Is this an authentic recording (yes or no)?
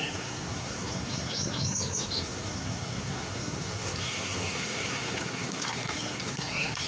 no